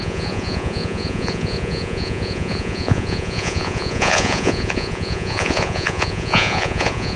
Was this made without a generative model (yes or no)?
no